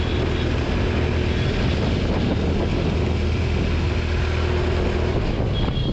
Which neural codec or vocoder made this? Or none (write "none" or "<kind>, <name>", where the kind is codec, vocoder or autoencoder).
none